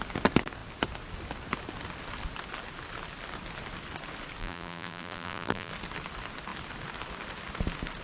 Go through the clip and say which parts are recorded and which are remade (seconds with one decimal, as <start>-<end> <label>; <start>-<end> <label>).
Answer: 0.0-4.4 recorded; 4.4-5.7 remade; 5.7-8.0 recorded